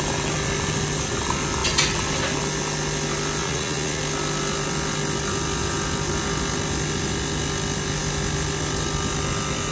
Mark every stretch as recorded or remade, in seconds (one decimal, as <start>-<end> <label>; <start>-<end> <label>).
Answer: 0.0-3.4 recorded; 3.4-4.0 remade; 4.0-9.7 recorded